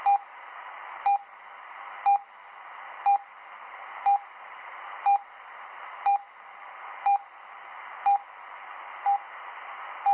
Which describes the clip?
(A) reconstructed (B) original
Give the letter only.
B